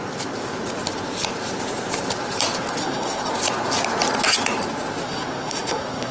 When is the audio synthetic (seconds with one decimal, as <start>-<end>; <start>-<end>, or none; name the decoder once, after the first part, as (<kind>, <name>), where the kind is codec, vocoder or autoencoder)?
2.8-3.3 (codec, SNAC); 5.0-6.1